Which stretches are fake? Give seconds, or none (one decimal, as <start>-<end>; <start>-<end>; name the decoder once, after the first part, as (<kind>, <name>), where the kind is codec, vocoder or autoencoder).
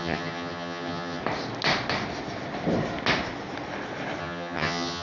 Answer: 0.0-1.2 (vocoder, HiFi-GAN); 4.2-5.0